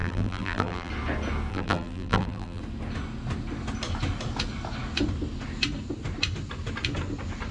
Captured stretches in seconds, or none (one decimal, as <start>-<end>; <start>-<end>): 0.9-1.5; 2.6-7.5